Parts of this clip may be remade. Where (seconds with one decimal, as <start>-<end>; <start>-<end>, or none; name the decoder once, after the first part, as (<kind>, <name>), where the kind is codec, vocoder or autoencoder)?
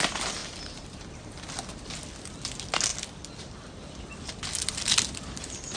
0.4-1.0 (vocoder, BigVGAN v2)